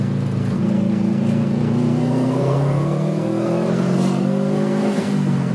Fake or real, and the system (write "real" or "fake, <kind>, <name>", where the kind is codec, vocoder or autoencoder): fake, codec, SNAC